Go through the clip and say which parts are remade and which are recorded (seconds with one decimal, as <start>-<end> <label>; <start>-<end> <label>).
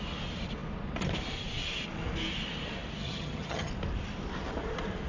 0.0-3.0 recorded; 3.0-3.7 remade; 3.7-5.1 recorded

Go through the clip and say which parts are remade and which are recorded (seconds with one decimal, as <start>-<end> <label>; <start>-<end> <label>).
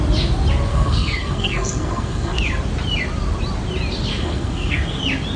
0.0-0.7 recorded; 0.7-2.4 remade; 2.4-4.1 recorded; 4.1-5.0 remade; 5.0-5.4 recorded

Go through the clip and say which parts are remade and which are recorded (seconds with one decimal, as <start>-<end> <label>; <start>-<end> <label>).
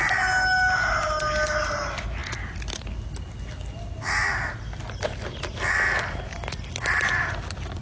0.0-7.8 recorded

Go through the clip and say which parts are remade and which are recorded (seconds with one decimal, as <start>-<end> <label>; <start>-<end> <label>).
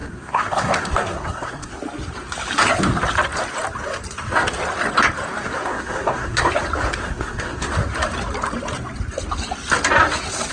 0.0-1.7 remade; 1.7-5.7 recorded; 5.7-6.5 remade; 6.5-7.0 recorded; 7.0-7.7 remade; 7.7-10.5 recorded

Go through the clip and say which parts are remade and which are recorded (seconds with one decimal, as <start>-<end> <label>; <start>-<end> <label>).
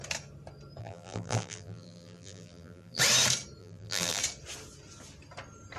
0.0-0.8 recorded; 0.8-3.0 remade; 3.0-3.6 recorded; 3.6-4.2 remade; 4.2-5.8 recorded